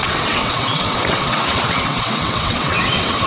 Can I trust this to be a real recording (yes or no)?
no